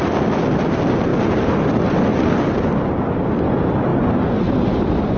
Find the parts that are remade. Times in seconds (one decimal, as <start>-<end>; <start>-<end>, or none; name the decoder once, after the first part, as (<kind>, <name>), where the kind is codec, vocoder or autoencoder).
none